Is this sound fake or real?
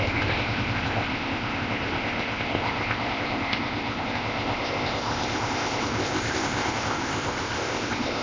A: fake